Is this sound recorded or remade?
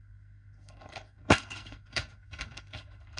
remade